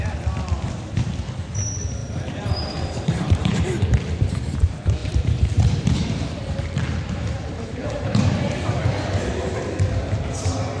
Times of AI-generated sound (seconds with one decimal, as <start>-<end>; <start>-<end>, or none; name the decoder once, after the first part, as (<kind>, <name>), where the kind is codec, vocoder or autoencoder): 2.0-3.6 (vocoder, BigVGAN v2); 5.0-8.9